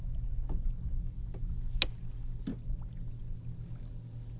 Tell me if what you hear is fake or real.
real